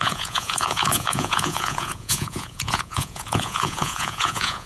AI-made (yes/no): yes